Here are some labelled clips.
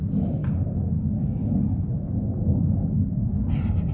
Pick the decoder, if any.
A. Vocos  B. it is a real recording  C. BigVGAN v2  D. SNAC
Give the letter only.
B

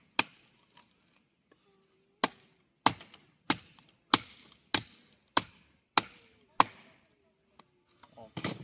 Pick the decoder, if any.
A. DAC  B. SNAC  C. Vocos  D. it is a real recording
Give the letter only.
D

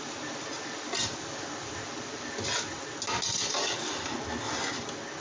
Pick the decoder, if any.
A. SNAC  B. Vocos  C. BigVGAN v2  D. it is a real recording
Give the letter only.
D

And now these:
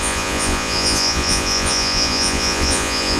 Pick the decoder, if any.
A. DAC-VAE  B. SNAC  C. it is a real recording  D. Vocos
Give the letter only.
D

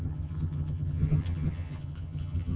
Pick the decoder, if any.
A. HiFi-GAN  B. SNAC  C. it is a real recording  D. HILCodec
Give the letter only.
A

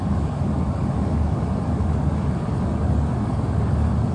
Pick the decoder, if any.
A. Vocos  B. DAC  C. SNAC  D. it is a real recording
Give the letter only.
B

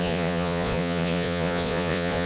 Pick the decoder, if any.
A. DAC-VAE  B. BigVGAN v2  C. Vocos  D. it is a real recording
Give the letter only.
C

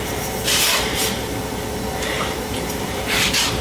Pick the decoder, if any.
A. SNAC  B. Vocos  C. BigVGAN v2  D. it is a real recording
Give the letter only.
C